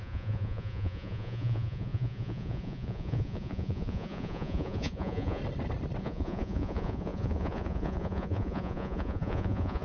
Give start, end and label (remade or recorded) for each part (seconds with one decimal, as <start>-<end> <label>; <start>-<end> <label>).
0.0-5.4 remade; 5.4-6.0 recorded; 6.0-9.8 remade